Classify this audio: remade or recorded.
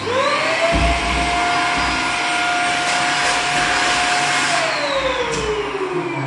recorded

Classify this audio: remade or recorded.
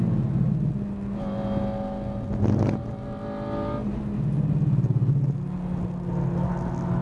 recorded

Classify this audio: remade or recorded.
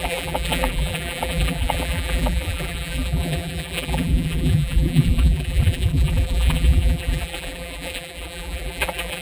remade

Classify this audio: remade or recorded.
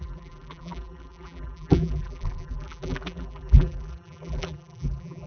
remade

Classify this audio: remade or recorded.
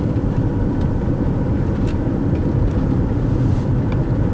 remade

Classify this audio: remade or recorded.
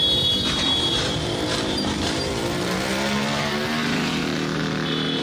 remade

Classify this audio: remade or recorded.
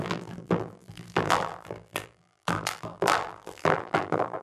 remade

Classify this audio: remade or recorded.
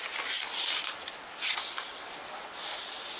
recorded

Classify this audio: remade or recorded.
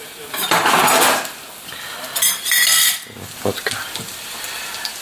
remade